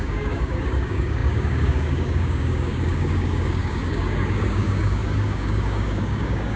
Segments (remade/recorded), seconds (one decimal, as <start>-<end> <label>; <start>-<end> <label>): 0.0-6.6 remade